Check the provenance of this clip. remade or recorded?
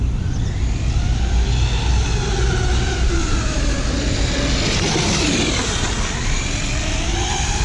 recorded